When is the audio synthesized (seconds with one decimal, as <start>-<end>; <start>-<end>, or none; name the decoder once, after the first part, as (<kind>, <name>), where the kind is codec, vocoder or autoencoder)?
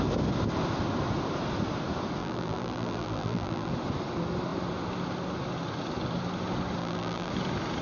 2.2-3.7 (vocoder, BigVGAN v2); 6.8-7.3